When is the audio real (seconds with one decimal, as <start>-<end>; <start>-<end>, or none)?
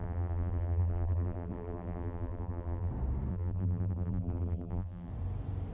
2.9-3.3; 5.1-5.7